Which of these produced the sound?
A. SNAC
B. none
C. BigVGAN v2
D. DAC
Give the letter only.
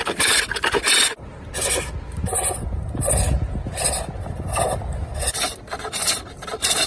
B